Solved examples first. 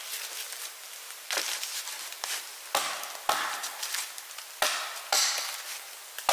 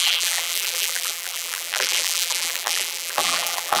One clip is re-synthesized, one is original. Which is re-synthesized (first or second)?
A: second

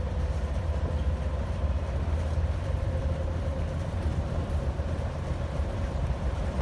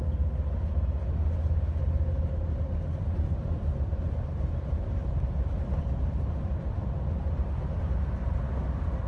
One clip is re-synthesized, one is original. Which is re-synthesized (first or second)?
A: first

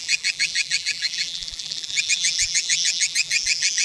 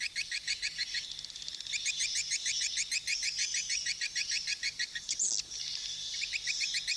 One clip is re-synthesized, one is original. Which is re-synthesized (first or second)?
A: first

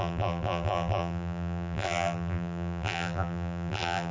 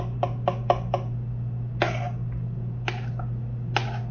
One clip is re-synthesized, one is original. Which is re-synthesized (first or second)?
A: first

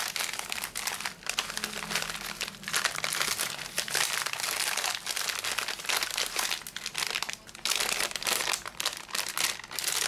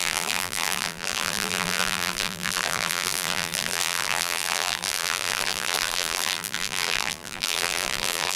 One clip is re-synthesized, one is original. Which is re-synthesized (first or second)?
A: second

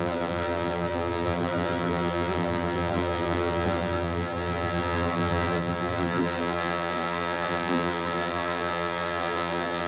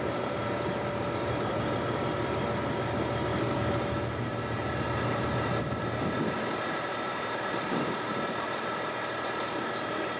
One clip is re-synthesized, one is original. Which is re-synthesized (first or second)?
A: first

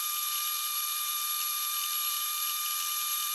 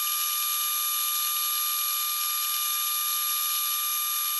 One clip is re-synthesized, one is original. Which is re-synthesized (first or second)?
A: first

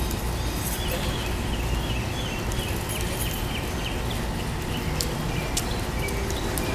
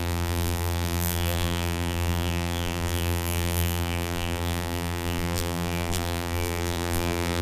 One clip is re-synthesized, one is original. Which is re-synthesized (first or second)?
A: second